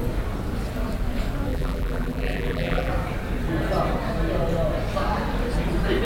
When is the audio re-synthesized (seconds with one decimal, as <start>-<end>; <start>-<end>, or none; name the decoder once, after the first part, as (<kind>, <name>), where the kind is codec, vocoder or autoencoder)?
1.5-2.9 (vocoder, BigVGAN v2)